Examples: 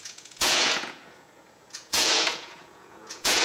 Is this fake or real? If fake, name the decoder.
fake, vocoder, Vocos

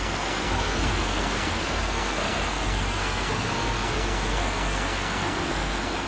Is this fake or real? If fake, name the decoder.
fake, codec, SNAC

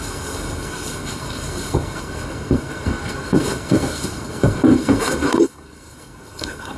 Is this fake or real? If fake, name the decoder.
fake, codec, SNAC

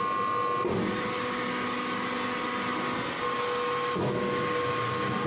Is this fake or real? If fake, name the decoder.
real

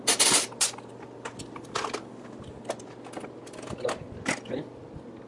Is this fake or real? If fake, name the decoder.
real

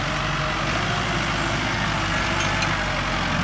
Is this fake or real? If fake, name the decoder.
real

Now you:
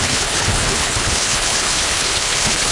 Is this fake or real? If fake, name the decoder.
fake, codec, HILCodec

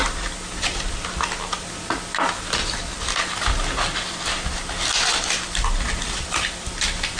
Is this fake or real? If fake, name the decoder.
real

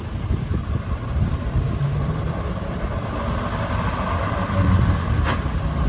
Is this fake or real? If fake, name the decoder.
real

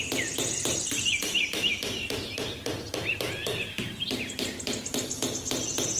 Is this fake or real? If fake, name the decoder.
real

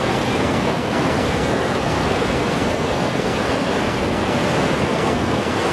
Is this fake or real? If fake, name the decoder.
fake, codec, SNAC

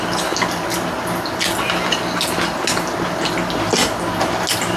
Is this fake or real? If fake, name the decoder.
real